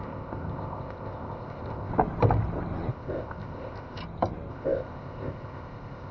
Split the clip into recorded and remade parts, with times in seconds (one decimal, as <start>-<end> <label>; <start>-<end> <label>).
0.0-1.9 remade; 1.9-2.9 recorded; 2.9-4.0 remade; 4.0-4.5 recorded; 4.5-6.1 remade